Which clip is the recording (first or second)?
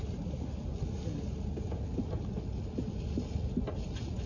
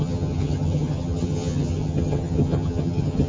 first